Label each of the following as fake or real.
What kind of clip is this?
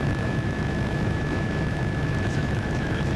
fake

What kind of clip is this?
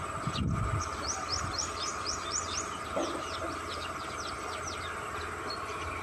fake